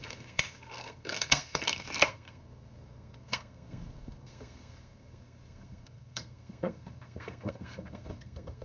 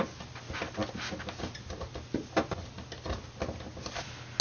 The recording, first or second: second